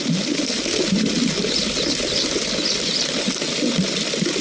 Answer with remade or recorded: recorded